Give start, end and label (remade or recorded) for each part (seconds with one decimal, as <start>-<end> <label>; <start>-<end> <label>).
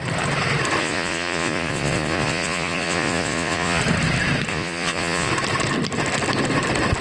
0.0-0.8 recorded; 0.8-3.8 remade; 3.8-4.5 recorded; 4.5-5.3 remade; 5.3-7.0 recorded